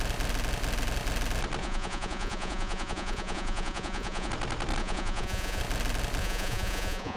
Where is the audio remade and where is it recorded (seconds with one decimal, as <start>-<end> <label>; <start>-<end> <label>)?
0.0-1.6 recorded; 1.6-4.3 remade; 4.3-4.8 recorded; 4.8-5.6 remade; 5.6-6.2 recorded; 6.2-7.2 remade